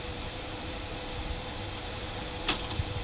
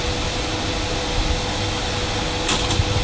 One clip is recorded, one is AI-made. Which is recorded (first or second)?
second